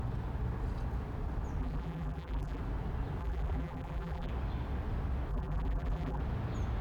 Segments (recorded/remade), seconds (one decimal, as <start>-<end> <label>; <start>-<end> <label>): 0.0-1.6 recorded; 1.6-2.6 remade; 2.6-3.2 recorded; 3.2-4.3 remade; 4.3-5.3 recorded; 5.3-6.2 remade; 6.2-6.8 recorded